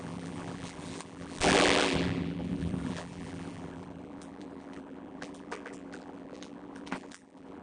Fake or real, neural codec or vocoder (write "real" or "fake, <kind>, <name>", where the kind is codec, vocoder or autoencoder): fake, vocoder, BigVGAN v2